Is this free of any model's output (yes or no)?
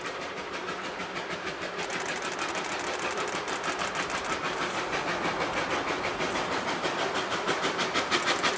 no